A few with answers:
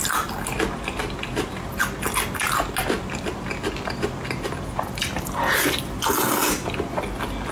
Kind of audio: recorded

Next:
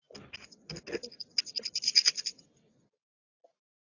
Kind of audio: recorded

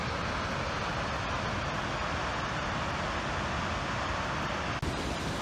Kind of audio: recorded